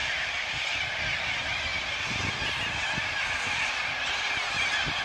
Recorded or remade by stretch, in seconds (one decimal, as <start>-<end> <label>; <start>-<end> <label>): 0.0-5.0 recorded